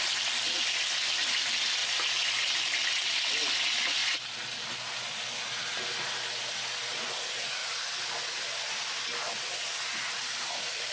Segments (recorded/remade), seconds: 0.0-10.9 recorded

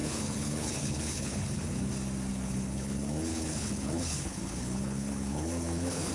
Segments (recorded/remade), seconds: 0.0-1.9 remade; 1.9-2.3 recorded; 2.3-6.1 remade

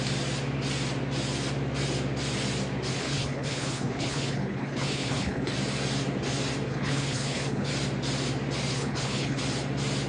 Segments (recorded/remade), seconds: 0.0-2.9 recorded; 2.9-5.5 remade; 5.5-6.7 recorded; 6.7-7.7 remade; 7.7-8.7 recorded; 8.7-9.4 remade; 9.4-10.1 recorded

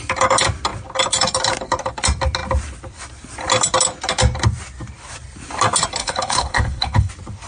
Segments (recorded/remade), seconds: 0.0-6.0 recorded; 6.0-7.1 remade; 7.1-7.5 recorded

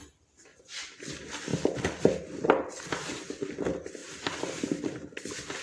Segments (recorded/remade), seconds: 0.0-5.6 recorded

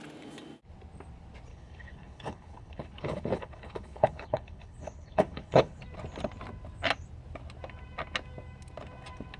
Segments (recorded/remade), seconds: 0.0-1.5 recorded; 1.5-5.8 remade; 5.8-9.4 recorded

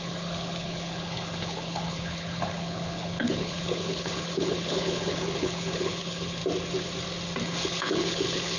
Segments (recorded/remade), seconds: 0.0-6.4 remade; 6.4-7.4 recorded; 7.4-8.6 remade

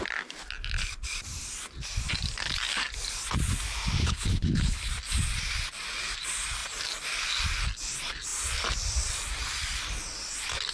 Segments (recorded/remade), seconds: 0.0-4.0 recorded; 4.0-4.9 remade; 4.9-10.7 recorded